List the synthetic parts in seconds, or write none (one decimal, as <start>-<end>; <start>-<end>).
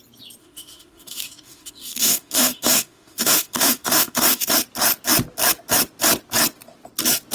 0.4-4.5